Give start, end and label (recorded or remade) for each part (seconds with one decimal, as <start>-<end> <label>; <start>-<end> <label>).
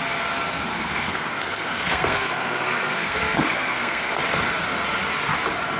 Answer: 0.0-0.7 recorded; 0.7-4.2 remade; 4.2-5.8 recorded